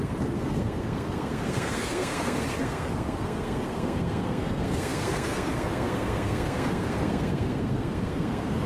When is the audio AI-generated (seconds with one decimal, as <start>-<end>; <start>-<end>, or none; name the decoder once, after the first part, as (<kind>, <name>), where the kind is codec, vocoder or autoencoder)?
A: 0.0-8.7 (codec, SNAC)